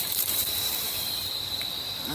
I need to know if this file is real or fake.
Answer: fake